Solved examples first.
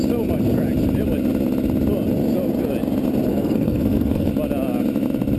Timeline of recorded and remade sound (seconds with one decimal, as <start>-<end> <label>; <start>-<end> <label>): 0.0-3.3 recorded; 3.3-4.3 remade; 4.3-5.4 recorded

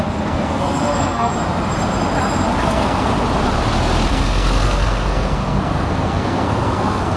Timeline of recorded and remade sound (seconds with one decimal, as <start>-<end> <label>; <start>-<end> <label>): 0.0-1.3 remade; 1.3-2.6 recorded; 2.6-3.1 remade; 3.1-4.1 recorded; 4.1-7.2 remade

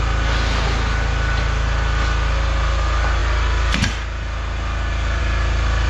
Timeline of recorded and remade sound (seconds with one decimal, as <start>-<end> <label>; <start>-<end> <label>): 0.0-5.9 recorded

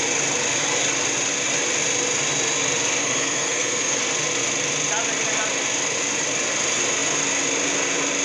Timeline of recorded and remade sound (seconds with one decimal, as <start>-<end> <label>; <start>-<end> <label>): 0.0-3.0 recorded; 3.0-4.0 remade; 4.0-8.2 recorded

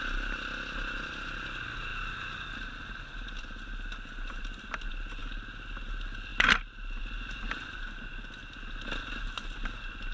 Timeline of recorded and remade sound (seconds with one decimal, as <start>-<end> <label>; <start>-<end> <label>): 0.0-10.1 recorded

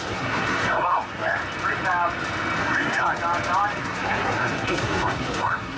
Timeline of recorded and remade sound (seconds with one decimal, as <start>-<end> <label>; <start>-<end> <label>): 0.0-1.4 remade; 1.4-2.6 recorded; 2.6-3.2 remade; 3.2-3.8 recorded; 3.8-5.8 remade

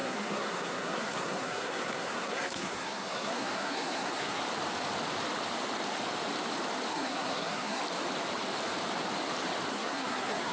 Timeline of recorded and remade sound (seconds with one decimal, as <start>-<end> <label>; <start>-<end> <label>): 0.0-4.4 remade; 4.4-6.9 recorded; 6.9-7.8 remade; 7.8-9.7 recorded; 9.7-10.5 remade

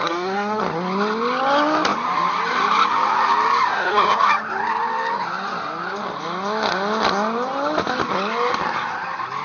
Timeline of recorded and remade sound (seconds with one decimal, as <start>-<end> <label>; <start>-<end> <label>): 0.0-0.6 remade; 0.6-3.7 recorded; 3.7-4.3 remade; 4.3-9.4 recorded